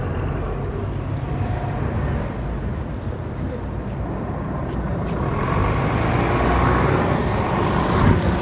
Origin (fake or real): real